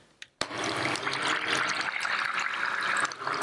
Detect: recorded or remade recorded